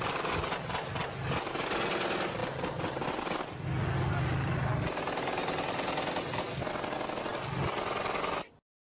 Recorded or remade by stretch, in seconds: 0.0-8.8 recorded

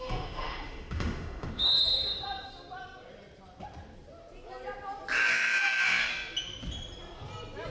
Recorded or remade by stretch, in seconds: 0.0-1.7 remade; 1.7-5.3 recorded; 5.3-6.1 remade; 6.1-7.7 recorded